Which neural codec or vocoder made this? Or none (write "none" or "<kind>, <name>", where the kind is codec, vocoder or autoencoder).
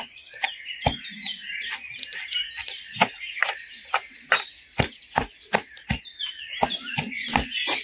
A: none